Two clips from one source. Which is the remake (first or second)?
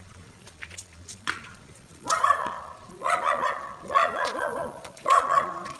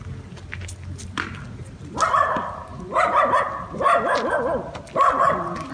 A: first